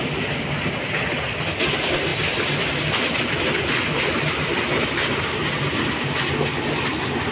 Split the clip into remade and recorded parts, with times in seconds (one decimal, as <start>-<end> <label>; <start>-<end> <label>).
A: 0.0-7.3 recorded